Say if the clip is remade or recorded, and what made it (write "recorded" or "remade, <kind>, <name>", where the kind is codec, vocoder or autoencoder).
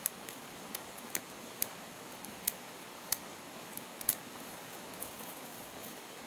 remade, codec, DAC